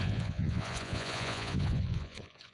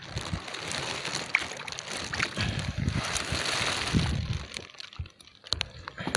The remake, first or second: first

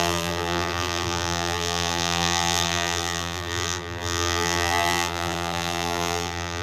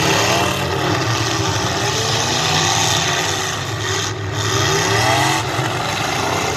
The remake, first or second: first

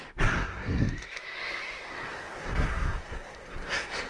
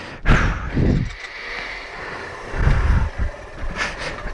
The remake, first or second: first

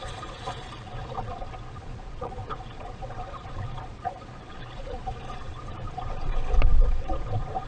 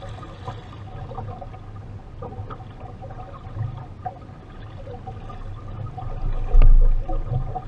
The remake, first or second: first